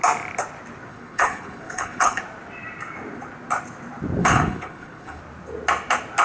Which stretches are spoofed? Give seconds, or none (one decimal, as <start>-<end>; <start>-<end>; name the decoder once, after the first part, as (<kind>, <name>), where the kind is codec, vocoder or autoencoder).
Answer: 0.9-2.2 (codec, HILCodec); 4.2-5.2